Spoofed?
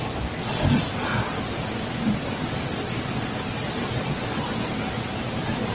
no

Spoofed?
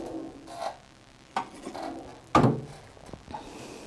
no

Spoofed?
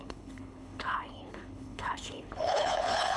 yes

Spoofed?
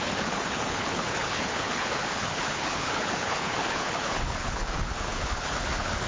yes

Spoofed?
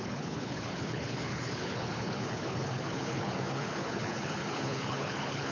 yes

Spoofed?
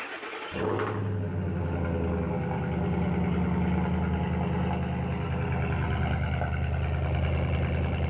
no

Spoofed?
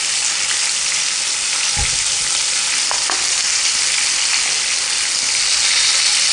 no